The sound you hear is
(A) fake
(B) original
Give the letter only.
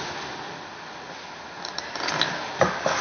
B